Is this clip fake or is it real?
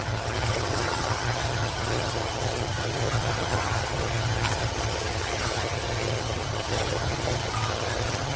fake